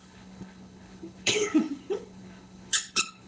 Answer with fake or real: fake